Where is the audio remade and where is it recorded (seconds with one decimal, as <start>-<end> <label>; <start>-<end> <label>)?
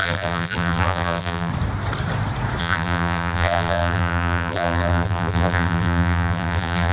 0.0-1.5 remade; 1.5-2.6 recorded; 2.6-6.9 remade